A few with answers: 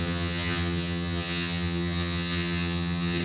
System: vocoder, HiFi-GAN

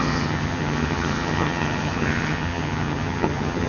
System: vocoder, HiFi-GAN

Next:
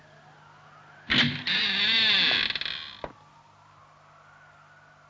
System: none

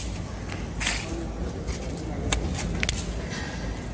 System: none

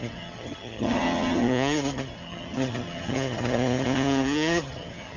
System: vocoder, HiFi-GAN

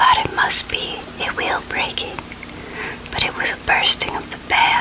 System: none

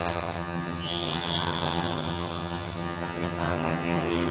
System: vocoder, HiFi-GAN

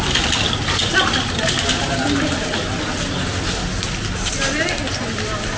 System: none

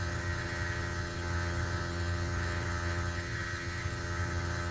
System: vocoder, HiFi-GAN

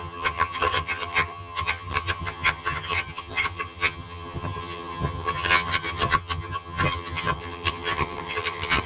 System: vocoder, HiFi-GAN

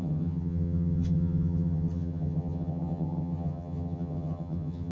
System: vocoder, HiFi-GAN